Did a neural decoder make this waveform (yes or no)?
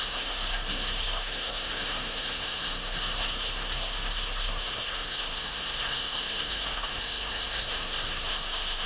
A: yes